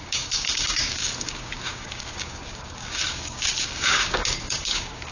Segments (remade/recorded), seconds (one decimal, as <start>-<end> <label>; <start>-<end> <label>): 0.0-5.1 remade

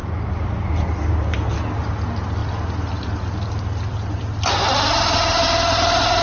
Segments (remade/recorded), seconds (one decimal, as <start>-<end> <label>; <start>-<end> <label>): 0.0-6.2 recorded

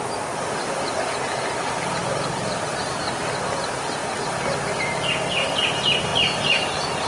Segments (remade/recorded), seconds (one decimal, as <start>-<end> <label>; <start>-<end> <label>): 0.0-7.1 recorded

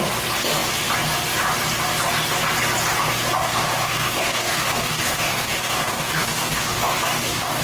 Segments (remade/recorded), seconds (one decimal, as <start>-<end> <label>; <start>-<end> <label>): 0.0-3.4 recorded; 3.4-7.6 remade

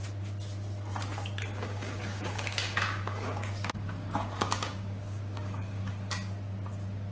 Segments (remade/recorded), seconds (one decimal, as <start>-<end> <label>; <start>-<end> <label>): 0.0-1.6 recorded; 1.6-5.9 remade; 5.9-7.1 recorded